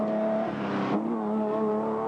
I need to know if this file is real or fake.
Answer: real